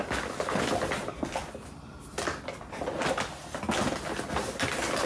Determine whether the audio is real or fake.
real